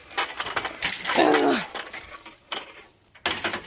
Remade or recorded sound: recorded